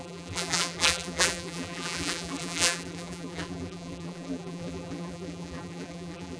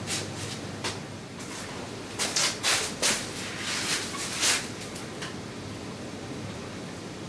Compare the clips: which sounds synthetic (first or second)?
first